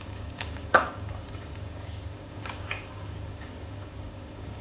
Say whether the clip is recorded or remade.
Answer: remade